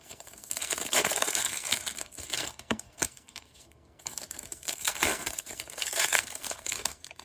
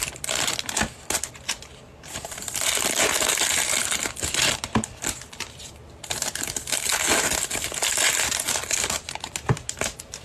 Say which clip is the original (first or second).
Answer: second